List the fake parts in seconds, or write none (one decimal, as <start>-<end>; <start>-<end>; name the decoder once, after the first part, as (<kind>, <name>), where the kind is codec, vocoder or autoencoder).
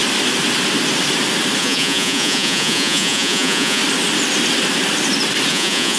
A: 1.6-3.8 (vocoder, Vocos); 5.5-6.0